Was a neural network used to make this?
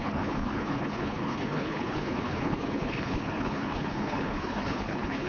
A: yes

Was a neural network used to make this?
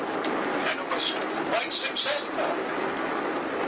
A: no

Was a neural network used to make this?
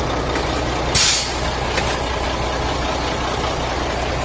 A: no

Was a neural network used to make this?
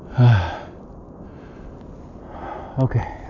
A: no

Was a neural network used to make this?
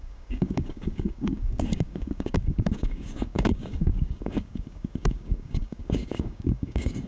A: yes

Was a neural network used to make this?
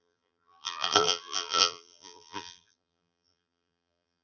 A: yes